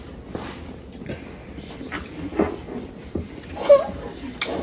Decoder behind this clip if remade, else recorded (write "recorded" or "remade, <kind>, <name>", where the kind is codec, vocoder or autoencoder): recorded